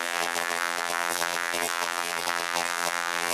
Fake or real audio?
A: fake